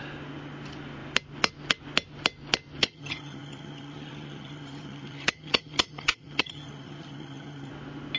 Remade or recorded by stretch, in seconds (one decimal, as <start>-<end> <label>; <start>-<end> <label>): 0.0-2.8 recorded; 2.8-7.7 remade; 7.7-8.2 recorded